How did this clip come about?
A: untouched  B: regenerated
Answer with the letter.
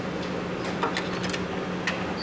A